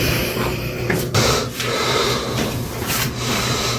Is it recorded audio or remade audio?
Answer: remade